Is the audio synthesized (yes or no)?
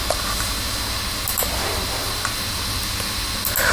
no